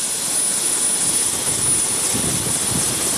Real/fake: real